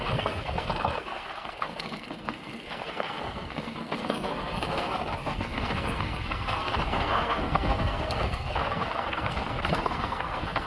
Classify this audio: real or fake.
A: fake